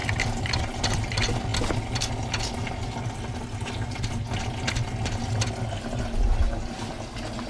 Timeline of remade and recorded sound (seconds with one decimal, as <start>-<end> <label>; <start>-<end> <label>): 0.0-7.5 recorded